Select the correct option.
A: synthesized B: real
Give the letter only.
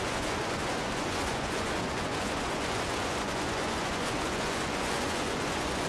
A